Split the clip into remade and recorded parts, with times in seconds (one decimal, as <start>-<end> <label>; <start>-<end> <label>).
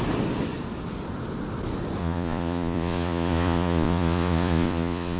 0.0-2.0 recorded; 2.0-5.2 remade